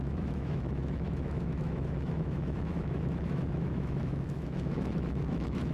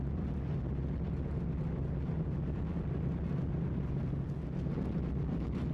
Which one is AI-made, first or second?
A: first